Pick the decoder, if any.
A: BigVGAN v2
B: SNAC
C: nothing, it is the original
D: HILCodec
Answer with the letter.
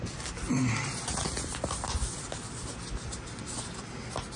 C